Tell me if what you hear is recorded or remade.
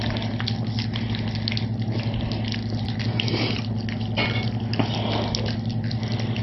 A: recorded